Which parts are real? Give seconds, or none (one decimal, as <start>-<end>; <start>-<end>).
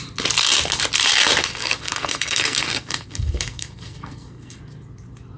0.0-1.4; 4.6-5.4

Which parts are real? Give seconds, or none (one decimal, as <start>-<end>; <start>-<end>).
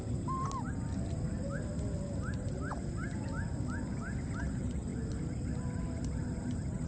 0.0-6.9